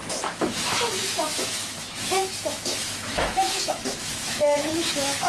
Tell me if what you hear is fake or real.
fake